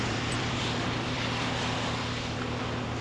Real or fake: fake